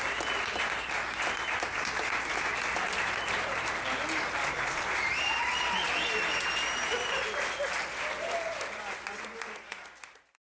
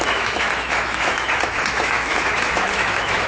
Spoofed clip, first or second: second